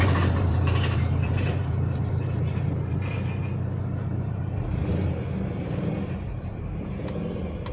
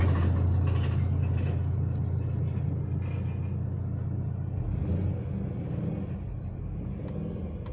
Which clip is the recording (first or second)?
second